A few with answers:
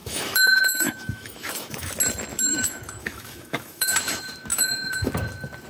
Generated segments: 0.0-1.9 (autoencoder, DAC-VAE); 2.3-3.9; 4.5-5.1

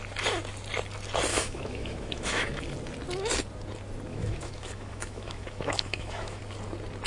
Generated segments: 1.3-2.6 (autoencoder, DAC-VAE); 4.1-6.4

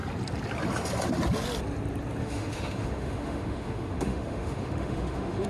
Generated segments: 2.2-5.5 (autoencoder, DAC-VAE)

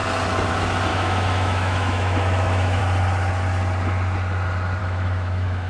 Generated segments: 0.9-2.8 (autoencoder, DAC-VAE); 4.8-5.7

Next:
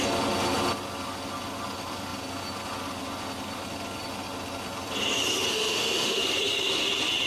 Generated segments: 5.5-6.2 (autoencoder, DAC-VAE)

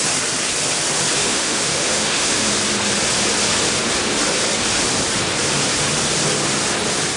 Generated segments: 1.2-2.5 (autoencoder, DAC-VAE)

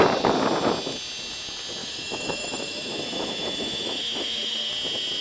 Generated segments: 1.8-4.7 (autoencoder, DAC-VAE)